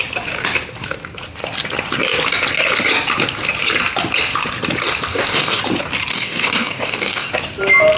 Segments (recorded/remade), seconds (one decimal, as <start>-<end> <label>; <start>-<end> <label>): 0.0-5.1 recorded; 5.1-5.6 remade; 5.6-6.1 recorded; 6.1-7.3 remade; 7.3-8.0 recorded